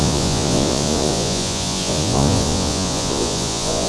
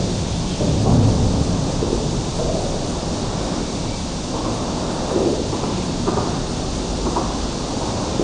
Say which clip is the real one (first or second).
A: second